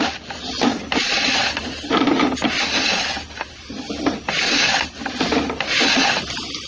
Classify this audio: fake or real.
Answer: real